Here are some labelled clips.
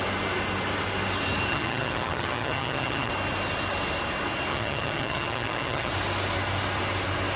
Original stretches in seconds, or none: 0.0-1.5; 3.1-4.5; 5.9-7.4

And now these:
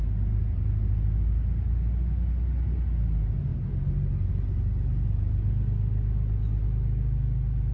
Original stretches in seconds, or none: 0.0-3.5; 4.3-7.7